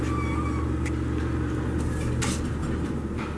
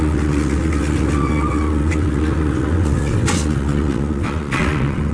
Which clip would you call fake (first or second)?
second